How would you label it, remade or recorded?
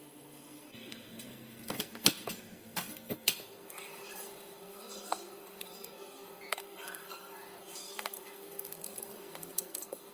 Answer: remade